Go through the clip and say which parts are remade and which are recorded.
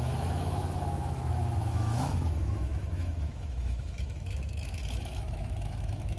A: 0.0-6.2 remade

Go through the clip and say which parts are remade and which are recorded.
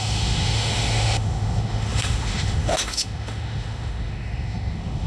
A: 0.0-5.1 remade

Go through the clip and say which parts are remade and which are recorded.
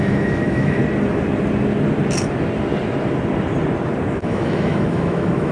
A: 0.0-0.8 remade; 0.8-4.1 recorded; 4.1-5.5 remade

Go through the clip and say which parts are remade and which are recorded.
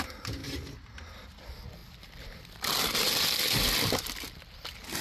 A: 0.0-5.0 recorded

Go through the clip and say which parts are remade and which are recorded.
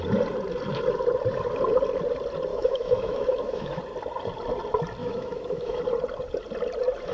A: 0.0-2.5 recorded; 2.5-3.8 remade; 3.8-5.0 recorded; 5.0-5.8 remade; 5.8-7.1 recorded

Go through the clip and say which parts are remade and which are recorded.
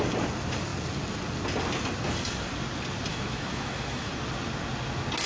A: 0.0-3.1 recorded; 3.1-4.1 remade; 4.1-5.3 recorded